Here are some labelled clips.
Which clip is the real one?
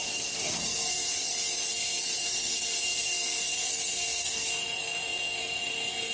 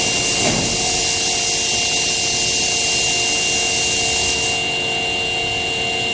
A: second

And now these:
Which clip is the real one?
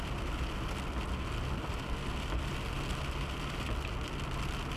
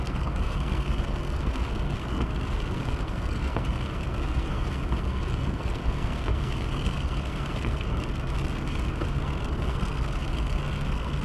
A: first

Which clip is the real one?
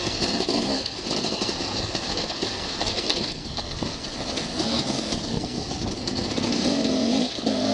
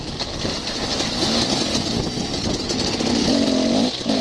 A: second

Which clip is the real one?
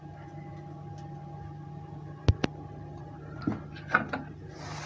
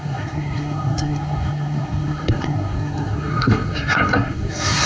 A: first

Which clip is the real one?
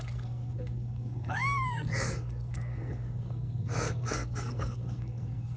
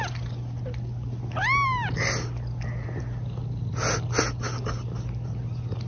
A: second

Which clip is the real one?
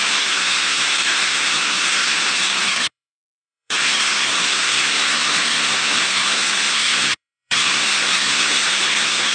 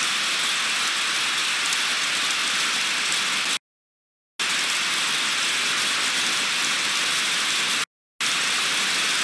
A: second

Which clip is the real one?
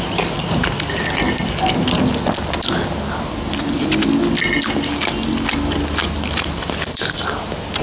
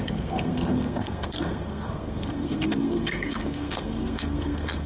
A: first